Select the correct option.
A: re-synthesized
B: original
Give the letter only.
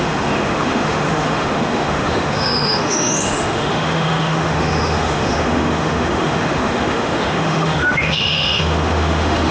A